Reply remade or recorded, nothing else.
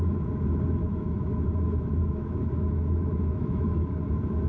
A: remade